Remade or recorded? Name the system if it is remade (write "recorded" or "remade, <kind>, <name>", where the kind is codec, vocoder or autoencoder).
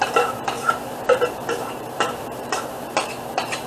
remade, vocoder, BigVGAN v2